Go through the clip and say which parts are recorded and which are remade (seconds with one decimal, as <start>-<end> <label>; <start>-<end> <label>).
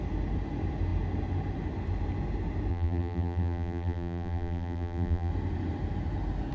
0.0-2.7 recorded; 2.7-5.3 remade; 5.3-6.5 recorded